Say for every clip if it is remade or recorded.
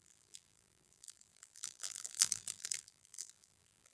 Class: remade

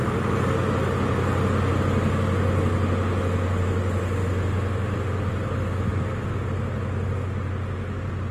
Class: recorded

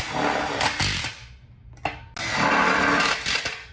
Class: recorded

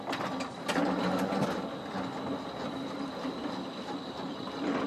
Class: recorded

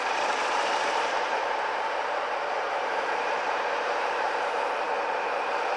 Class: remade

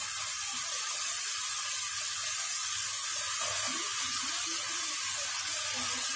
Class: recorded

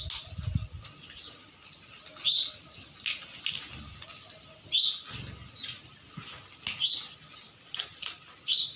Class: recorded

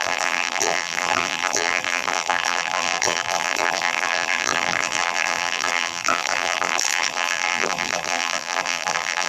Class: remade